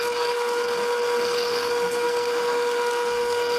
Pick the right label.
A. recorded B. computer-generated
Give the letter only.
B